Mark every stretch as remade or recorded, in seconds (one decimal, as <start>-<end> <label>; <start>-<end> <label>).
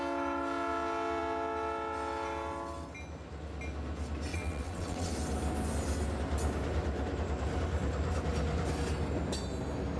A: 0.0-4.3 recorded; 4.3-5.1 remade; 5.1-10.0 recorded